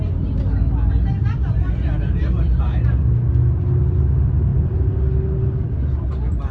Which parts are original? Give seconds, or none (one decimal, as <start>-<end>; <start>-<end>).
0.0-6.5